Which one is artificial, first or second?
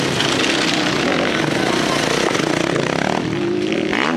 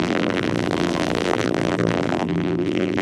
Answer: second